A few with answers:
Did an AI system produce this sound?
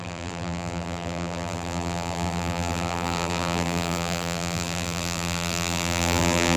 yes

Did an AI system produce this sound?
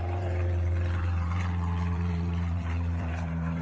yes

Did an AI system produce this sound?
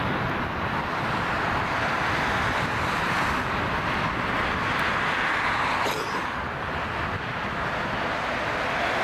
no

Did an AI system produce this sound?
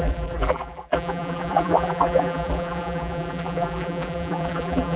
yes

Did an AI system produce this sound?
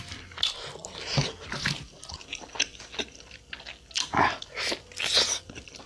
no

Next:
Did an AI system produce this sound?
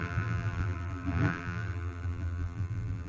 yes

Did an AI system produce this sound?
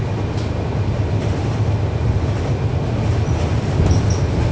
no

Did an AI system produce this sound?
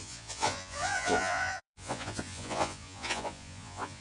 yes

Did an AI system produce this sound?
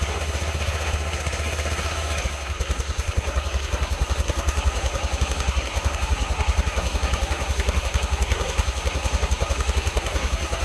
yes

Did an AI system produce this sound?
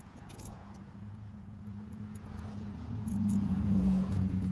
yes